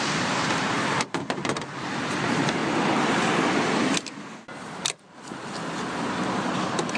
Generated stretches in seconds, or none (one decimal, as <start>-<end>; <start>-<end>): 0.0-2.6